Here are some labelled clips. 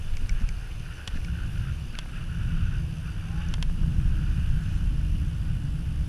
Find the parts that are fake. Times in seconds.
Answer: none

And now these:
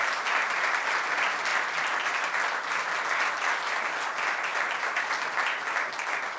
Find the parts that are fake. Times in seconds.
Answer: none

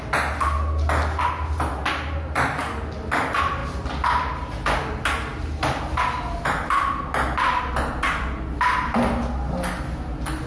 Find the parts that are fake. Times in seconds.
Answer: none